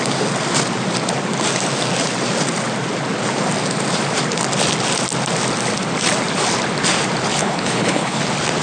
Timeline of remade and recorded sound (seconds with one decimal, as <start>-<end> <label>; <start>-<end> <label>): 0.0-7.4 recorded; 7.4-8.2 remade; 8.2-8.6 recorded